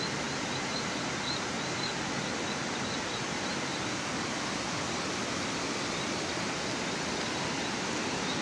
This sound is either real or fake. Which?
real